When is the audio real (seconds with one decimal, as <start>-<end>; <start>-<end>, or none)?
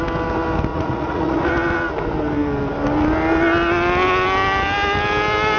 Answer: 0.0-0.7; 1.5-5.6